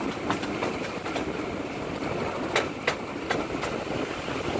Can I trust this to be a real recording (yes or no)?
yes